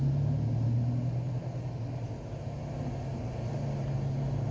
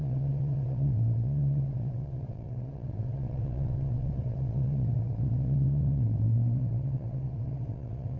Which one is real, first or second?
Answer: first